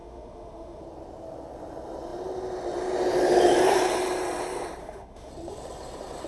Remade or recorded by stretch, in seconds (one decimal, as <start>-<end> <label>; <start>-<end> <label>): 0.0-0.8 remade; 0.8-4.8 recorded; 4.8-5.3 remade; 5.3-6.3 recorded